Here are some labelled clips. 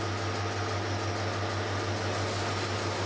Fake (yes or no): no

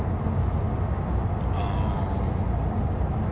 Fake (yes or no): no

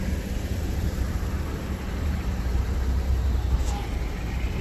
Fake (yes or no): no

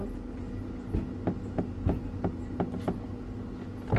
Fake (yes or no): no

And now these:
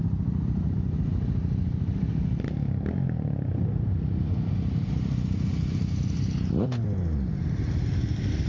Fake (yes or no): no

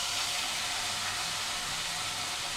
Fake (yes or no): no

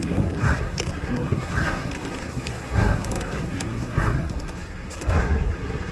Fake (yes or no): yes